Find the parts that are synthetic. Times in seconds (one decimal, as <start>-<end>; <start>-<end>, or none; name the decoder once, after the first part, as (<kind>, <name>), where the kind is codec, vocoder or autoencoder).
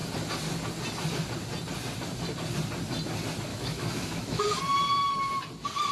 3.5-4.4 (autoencoder, DAC-VAE)